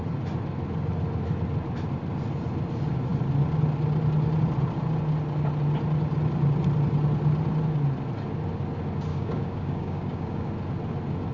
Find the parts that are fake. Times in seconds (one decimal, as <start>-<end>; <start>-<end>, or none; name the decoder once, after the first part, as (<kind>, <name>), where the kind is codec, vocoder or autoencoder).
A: 9.1-10.5 (codec, DAC)